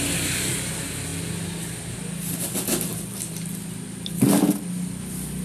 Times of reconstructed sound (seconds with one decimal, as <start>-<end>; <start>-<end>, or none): 2.9-4.2